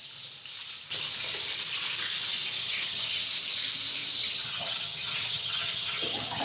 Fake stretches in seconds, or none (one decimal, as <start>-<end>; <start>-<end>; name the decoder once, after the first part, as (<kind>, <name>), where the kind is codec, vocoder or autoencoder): 2.6-3.2 (vocoder, HiFi-GAN); 4.2-6.4